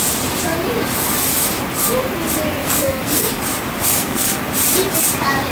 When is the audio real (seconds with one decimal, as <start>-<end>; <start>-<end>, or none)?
0.0-2.6; 3.4-3.8; 4.4-5.5